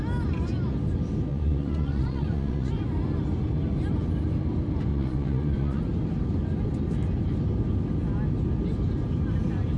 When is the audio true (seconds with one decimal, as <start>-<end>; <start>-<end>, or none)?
0.0-1.3; 2.7-4.9; 5.8-9.8